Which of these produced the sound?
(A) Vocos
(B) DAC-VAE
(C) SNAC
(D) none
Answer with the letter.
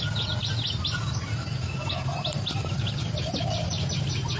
D